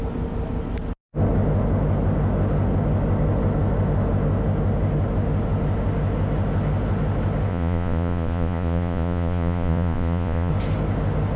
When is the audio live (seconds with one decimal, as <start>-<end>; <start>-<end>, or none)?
0.0-7.5; 10.5-11.4